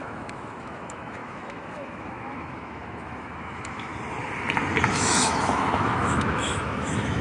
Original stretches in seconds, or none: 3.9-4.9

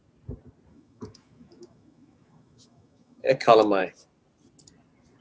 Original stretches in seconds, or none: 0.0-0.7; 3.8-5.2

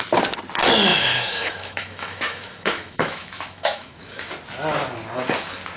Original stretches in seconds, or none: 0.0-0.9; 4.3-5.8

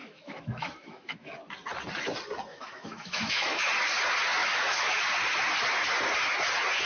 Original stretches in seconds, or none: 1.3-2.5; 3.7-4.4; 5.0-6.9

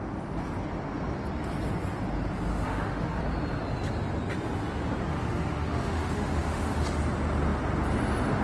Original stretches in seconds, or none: 0.0-2.5; 3.2-5.1; 7.0-8.4

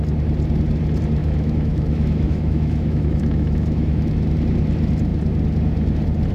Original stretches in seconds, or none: 0.0-1.2; 4.1-6.3